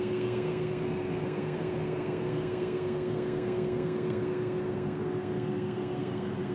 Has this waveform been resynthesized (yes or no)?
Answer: yes